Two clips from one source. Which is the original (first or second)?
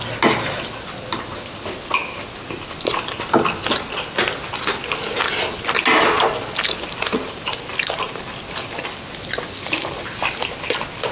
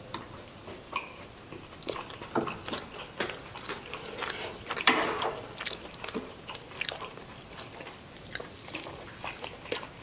first